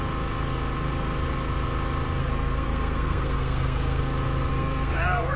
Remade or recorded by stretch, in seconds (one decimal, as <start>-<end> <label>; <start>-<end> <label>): 0.0-2.2 recorded; 2.2-4.0 remade; 4.0-4.5 recorded; 4.5-5.4 remade